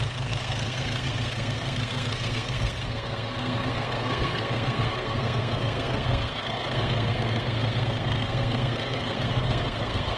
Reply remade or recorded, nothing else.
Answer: remade